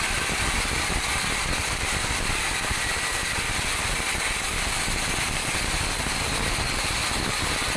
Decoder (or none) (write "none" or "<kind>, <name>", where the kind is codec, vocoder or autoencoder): vocoder, BigVGAN v2